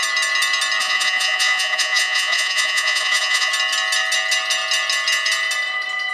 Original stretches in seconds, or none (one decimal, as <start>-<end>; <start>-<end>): 0.0-0.8; 3.5-6.1